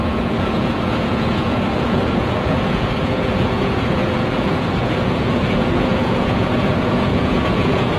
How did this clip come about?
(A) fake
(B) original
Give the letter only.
A